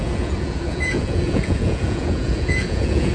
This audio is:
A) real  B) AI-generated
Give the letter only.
B